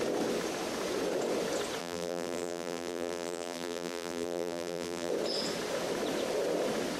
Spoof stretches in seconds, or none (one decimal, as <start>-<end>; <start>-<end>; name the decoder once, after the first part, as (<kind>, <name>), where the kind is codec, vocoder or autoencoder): 1.8-5.1 (vocoder, BigVGAN v2)